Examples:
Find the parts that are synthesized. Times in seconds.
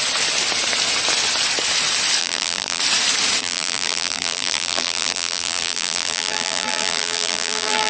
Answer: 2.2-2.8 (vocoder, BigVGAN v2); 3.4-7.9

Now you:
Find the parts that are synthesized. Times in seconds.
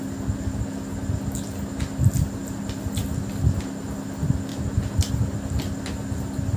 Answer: none